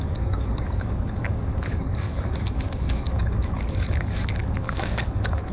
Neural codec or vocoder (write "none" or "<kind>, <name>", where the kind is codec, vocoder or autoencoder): codec, DAC